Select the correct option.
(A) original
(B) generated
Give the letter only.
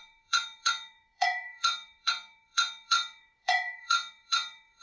B